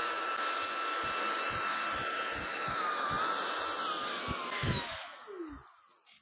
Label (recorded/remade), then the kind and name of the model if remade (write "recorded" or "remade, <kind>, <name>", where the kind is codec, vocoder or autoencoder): recorded